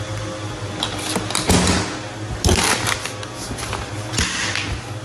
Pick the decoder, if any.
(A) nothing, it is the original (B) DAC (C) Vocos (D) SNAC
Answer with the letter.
A